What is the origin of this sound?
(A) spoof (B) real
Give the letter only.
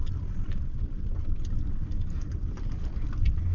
B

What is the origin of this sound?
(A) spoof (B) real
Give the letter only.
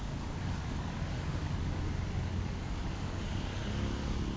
A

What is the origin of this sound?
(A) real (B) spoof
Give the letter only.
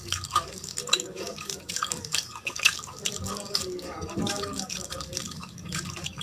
B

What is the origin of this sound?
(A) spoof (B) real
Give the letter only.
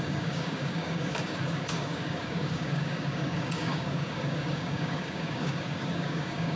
A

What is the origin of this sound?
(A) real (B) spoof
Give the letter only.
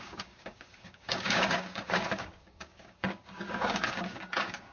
B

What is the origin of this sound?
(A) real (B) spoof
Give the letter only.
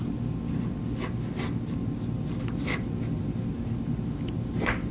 A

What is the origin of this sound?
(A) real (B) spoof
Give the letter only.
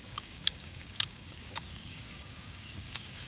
B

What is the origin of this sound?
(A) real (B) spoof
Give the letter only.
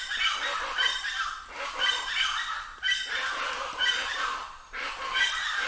A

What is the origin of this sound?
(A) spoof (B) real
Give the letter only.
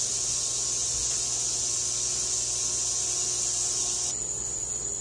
B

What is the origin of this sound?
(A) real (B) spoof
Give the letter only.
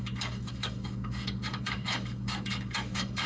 B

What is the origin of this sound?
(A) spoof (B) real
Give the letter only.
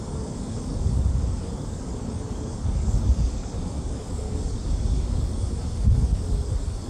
A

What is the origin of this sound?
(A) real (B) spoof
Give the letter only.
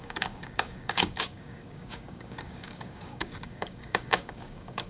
B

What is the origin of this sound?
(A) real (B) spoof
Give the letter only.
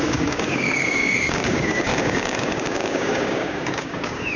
B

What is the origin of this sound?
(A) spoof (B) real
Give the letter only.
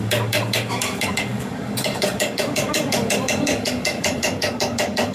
A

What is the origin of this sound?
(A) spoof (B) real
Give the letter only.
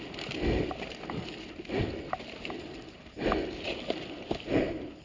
B